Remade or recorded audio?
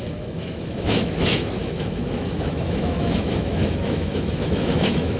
remade